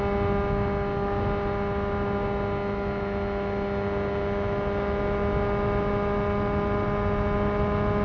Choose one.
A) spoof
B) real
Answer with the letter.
B